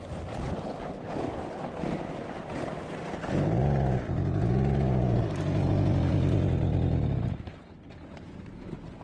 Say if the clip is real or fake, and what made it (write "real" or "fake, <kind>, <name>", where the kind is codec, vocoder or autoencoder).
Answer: real